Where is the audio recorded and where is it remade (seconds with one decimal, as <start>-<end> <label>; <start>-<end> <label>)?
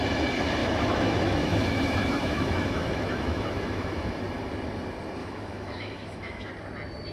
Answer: 0.0-0.6 recorded; 0.6-4.2 remade; 4.2-5.2 recorded; 5.2-6.5 remade; 6.5-7.1 recorded